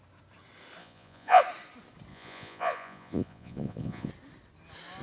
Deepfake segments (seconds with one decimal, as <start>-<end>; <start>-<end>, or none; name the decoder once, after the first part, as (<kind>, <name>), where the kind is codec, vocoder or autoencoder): 0.8-1.4 (vocoder, Vocos); 2.1-4.1